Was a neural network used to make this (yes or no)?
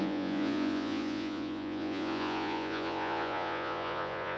yes